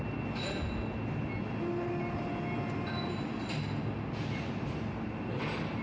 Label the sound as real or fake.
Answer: real